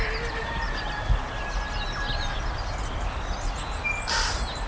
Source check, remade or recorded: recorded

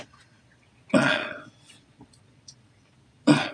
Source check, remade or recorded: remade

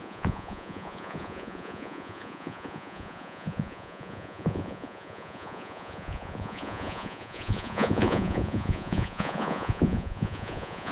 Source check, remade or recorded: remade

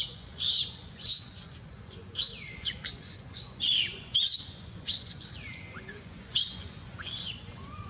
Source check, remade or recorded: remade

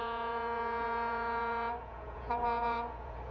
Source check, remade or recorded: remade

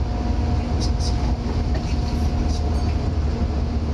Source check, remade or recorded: recorded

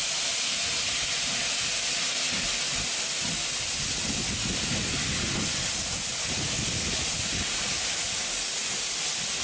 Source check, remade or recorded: recorded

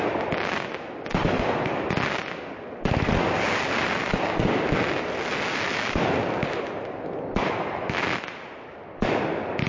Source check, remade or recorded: recorded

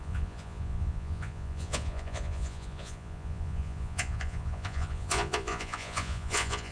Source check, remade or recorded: remade